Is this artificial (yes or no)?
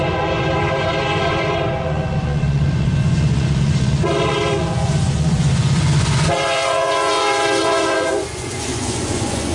yes